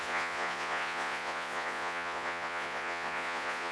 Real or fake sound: fake